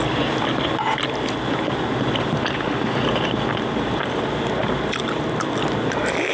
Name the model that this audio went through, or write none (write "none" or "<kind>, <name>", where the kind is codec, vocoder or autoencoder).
none